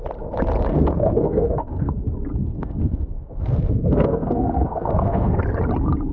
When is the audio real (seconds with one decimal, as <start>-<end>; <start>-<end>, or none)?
0.0-0.7; 1.9-2.4; 5.4-6.1